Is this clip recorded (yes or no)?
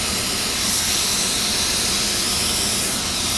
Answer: yes